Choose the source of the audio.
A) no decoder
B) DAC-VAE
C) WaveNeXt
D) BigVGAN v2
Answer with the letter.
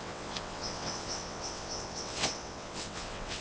C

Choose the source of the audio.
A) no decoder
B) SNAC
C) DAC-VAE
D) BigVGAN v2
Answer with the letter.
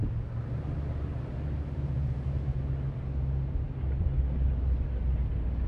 A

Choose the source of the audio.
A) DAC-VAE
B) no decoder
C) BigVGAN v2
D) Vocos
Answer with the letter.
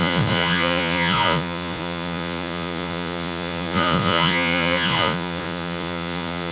D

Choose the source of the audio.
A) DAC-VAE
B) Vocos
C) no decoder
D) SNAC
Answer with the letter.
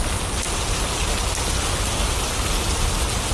C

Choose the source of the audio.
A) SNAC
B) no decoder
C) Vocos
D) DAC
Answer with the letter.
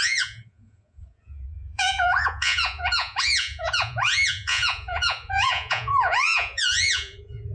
C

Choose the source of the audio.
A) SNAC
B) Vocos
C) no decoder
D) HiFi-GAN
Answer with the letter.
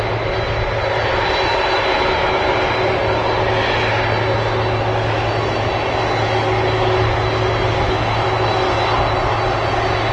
C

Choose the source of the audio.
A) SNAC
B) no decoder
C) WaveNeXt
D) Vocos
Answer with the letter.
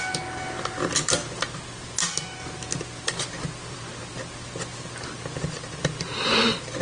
B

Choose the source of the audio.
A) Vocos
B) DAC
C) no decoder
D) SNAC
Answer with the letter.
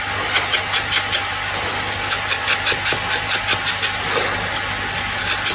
C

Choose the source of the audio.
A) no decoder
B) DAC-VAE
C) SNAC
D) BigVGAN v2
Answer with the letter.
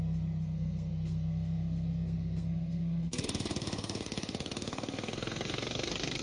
C